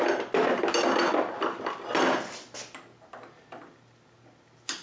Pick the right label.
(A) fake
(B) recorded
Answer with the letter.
B